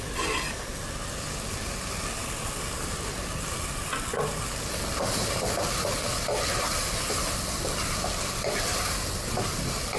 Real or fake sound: real